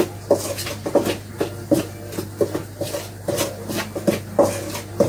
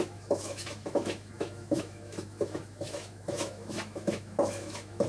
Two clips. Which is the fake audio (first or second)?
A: second